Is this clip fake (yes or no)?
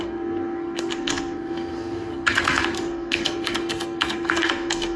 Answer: yes